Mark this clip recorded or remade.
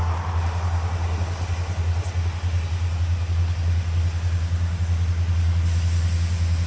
recorded